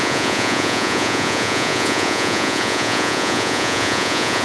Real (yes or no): no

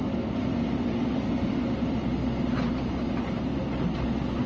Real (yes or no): yes